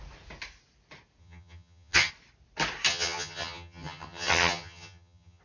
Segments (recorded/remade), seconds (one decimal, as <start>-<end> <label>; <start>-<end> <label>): 0.0-1.2 recorded; 1.2-2.1 remade; 2.1-2.9 recorded; 2.9-5.4 remade